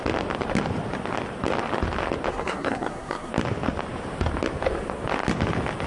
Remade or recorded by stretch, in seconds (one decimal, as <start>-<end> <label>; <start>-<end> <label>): 0.0-2.3 recorded; 2.3-3.3 remade; 3.3-5.9 recorded